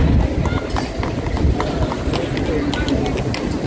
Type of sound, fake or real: real